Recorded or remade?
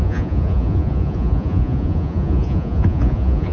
remade